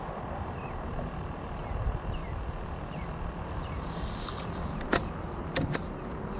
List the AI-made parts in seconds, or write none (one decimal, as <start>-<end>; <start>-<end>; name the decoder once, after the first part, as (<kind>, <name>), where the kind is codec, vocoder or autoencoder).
none